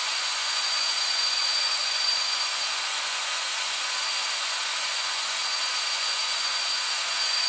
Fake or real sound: fake